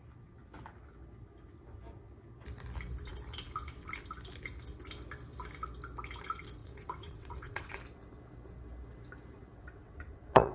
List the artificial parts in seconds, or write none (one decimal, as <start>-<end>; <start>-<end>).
6.6-7.8; 9.5-10.5